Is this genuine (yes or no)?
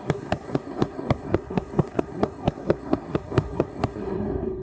no